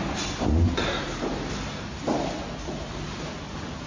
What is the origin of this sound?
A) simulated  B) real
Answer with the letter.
B